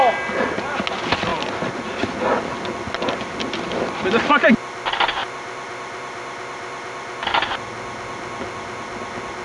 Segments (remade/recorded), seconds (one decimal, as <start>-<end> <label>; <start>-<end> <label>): 0.0-1.3 recorded; 1.3-2.1 remade; 2.1-5.2 recorded; 5.2-7.6 remade; 7.6-9.4 recorded